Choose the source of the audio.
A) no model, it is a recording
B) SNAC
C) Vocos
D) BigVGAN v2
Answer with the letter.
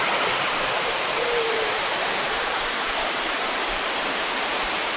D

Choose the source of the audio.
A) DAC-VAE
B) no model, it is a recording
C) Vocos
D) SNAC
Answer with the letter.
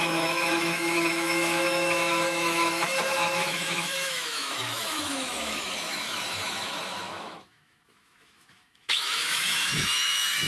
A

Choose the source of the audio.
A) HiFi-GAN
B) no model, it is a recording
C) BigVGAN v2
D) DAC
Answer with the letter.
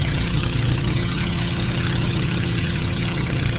A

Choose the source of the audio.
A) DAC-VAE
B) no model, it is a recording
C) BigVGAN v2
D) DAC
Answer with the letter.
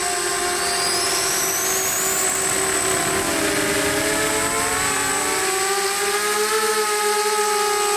B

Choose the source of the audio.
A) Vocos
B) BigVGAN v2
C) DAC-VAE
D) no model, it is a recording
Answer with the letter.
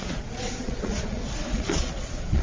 A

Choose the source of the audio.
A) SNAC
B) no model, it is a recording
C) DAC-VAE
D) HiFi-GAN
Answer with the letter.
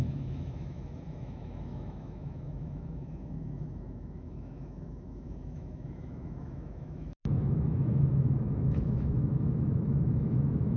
C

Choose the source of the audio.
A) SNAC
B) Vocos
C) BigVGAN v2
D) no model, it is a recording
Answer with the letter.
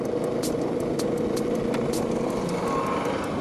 D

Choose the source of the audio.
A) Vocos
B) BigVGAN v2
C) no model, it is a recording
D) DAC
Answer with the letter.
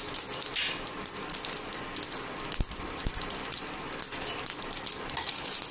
C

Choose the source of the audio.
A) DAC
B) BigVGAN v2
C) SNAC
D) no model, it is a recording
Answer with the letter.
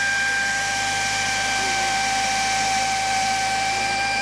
D